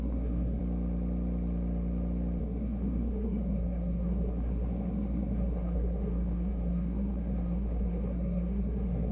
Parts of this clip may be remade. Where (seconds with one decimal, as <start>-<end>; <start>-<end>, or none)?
0.0-0.6; 2.4-9.1